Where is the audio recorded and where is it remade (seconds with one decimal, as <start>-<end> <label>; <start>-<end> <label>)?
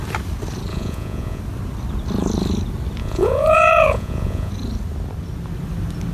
0.0-0.7 recorded; 0.7-1.4 remade; 1.4-3.0 recorded; 3.0-4.5 remade; 4.5-6.1 recorded